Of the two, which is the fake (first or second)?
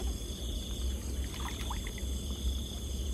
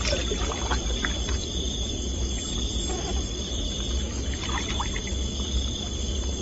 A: second